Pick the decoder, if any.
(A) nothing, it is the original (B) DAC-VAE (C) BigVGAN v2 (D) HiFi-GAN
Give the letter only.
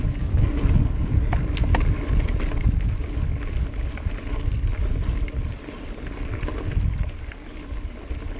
A